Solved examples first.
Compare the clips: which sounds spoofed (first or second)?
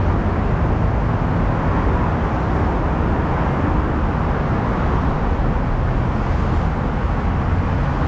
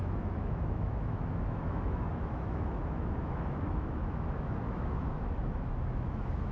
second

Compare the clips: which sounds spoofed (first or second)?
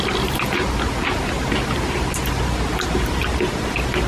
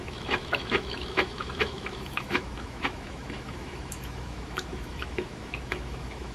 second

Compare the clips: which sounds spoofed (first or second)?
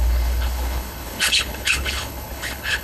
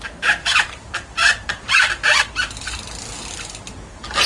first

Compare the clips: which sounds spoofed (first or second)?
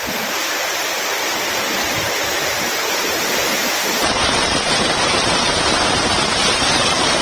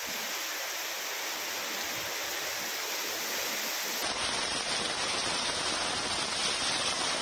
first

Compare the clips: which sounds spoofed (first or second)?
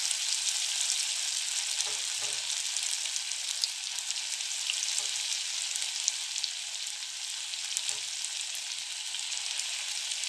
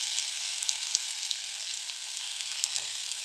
second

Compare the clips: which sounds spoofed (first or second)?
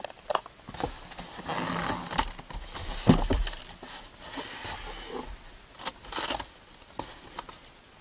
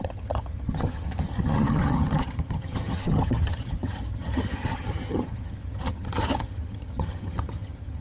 second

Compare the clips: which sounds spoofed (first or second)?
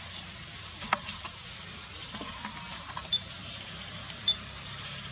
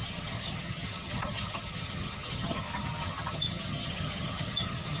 second